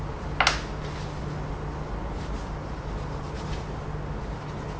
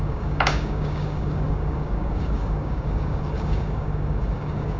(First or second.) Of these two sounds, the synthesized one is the second